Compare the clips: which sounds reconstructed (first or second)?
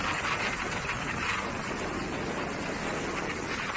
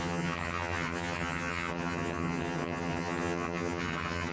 second